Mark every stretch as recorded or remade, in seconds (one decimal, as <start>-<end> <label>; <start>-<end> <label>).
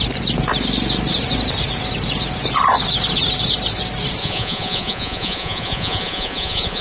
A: 0.0-4.2 recorded; 4.2-6.8 remade